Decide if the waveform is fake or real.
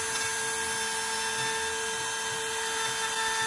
real